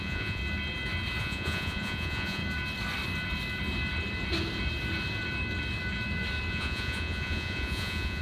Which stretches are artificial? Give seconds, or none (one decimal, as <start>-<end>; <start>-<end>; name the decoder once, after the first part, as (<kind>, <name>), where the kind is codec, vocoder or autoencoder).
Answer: 0.0-0.4 (vocoder, Vocos); 1.2-2.4; 6.5-8.2